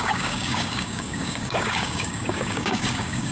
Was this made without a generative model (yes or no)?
no